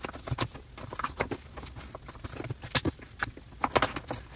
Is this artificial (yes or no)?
no